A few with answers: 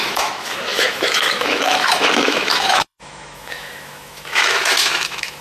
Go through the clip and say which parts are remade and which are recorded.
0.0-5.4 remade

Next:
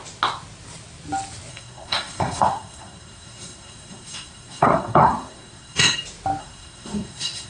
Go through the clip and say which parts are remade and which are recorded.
0.0-1.5 recorded; 1.5-6.0 remade; 6.0-6.4 recorded; 6.4-7.5 remade

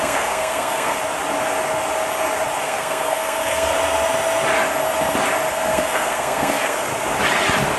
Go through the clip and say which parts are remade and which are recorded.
0.0-1.0 remade; 1.0-2.6 recorded; 2.6-3.7 remade; 3.7-5.5 recorded; 5.5-6.9 remade; 6.9-7.8 recorded

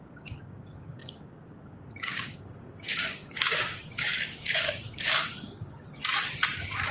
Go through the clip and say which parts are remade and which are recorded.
0.0-6.0 remade; 6.0-6.9 recorded

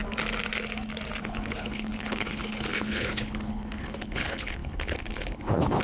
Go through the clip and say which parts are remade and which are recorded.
0.0-1.2 recorded; 1.2-5.8 remade